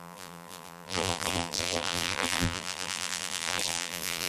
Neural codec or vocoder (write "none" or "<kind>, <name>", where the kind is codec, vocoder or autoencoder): vocoder, BigVGAN v2